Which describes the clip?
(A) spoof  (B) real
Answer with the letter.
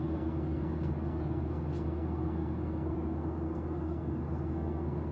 A